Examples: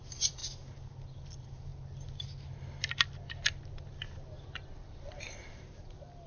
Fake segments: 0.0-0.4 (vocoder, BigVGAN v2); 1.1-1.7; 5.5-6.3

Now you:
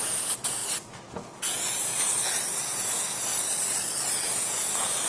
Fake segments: 0.0-0.6 (vocoder, Vocos); 1.2-1.9; 2.7-3.3; 4.2-5.1

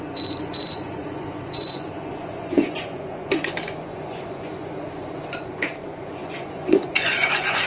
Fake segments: 0.0-7.7 (vocoder, Vocos)